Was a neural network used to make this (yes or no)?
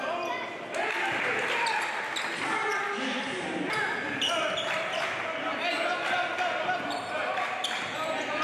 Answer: no